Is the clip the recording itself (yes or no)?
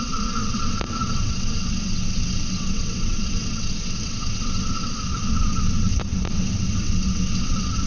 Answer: no